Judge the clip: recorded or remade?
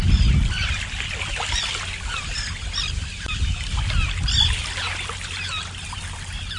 recorded